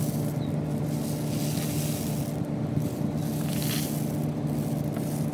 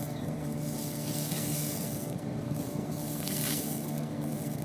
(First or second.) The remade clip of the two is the second